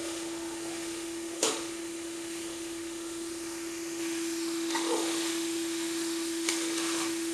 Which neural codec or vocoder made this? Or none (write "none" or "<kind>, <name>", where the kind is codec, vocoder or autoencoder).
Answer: autoencoder, DAC-VAE